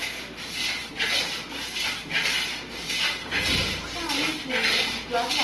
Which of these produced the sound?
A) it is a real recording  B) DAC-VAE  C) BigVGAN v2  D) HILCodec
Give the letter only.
A